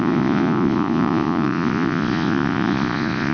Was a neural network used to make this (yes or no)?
yes